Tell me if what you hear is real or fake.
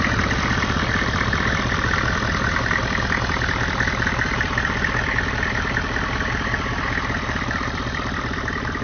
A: real